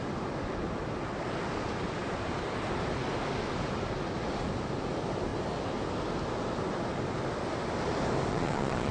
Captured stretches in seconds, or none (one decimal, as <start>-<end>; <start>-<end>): 0.0-8.3